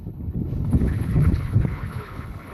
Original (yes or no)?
no